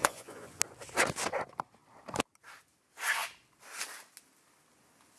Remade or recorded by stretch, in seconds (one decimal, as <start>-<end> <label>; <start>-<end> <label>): 0.0-0.6 remade; 0.6-5.2 recorded